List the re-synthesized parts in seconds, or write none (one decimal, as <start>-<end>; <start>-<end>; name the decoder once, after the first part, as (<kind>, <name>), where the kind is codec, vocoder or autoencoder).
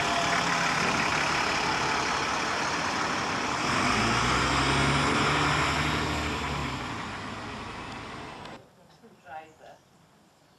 none